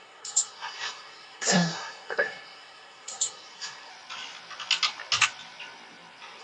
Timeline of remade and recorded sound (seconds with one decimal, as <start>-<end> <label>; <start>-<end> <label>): 0.0-3.9 remade; 3.9-6.4 recorded